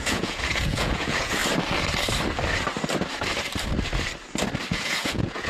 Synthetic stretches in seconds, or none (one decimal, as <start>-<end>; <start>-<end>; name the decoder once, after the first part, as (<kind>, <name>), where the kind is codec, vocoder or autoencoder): 0.0-1.4 (vocoder, Vocos); 4.7-5.5